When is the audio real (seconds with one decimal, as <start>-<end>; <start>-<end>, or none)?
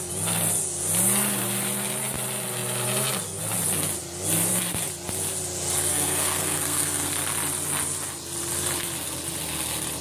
0.0-5.9; 7.1-10.0